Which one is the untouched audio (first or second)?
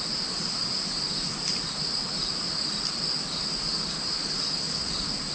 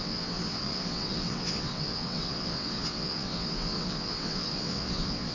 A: first